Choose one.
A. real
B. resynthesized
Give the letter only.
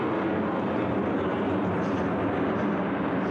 A